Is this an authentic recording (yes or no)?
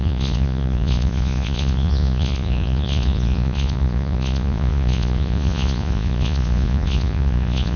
no